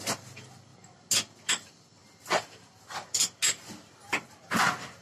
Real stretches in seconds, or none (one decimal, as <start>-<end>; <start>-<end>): 0.7-1.5; 2.0-5.0